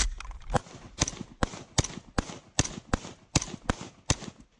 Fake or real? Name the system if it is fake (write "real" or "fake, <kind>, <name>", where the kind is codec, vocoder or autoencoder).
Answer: real